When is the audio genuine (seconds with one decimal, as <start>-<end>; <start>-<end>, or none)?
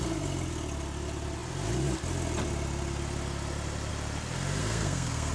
0.0-4.6